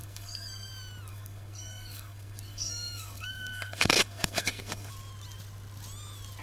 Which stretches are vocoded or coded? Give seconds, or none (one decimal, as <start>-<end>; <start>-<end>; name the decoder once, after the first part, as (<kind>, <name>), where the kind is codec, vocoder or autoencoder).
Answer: 0.0-0.7 (codec, SNAC); 1.1-4.9